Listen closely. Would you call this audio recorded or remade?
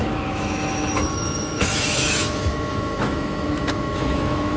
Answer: remade